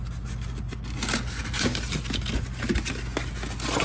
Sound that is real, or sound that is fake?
real